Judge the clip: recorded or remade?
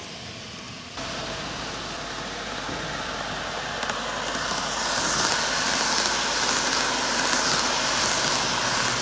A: recorded